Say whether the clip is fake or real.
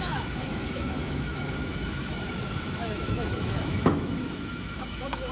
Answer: fake